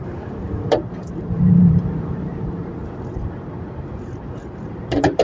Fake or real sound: fake